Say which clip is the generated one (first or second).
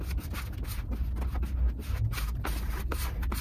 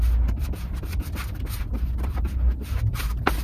second